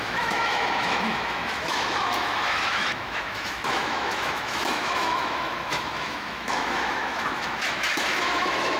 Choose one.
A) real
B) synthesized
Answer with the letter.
B